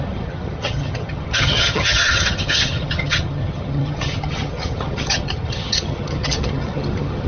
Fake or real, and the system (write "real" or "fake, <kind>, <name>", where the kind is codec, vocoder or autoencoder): fake, vocoder, HiFi-GAN